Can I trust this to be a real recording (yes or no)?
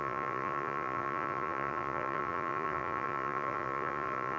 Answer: no